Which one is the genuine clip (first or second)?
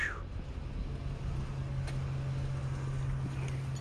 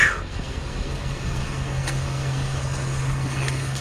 first